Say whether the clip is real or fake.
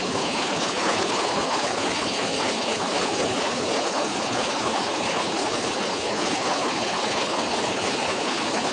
fake